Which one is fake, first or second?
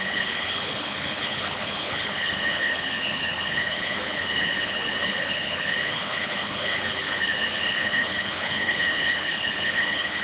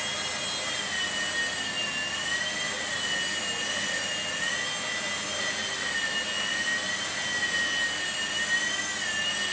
first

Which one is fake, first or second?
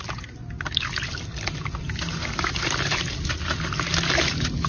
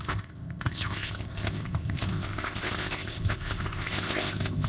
second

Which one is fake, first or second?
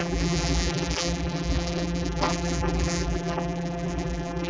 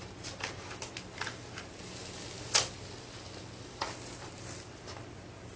first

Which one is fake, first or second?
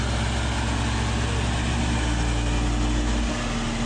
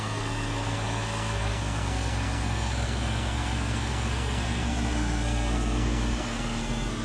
second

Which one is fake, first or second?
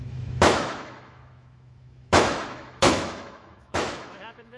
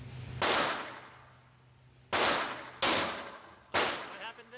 first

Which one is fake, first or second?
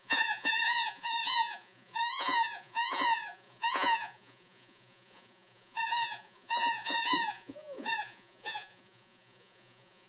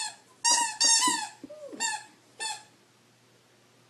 first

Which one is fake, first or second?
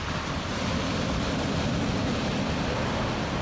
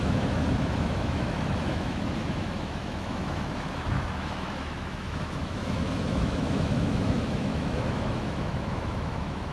second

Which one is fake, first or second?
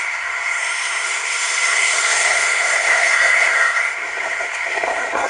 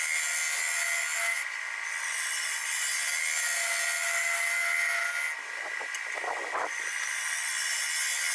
first